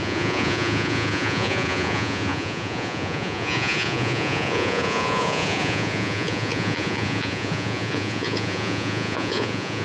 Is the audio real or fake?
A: fake